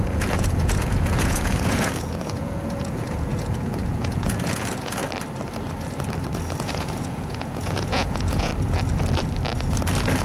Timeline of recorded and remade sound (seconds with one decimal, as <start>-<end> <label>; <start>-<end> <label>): 0.0-5.0 remade; 5.0-6.5 recorded; 6.5-8.5 remade; 8.5-10.2 recorded